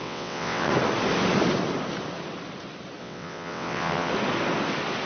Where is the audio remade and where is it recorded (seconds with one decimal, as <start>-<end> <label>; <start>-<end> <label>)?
0.0-0.7 remade; 0.7-3.0 recorded; 3.0-4.1 remade; 4.1-5.1 recorded